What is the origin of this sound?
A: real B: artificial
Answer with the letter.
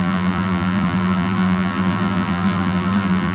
B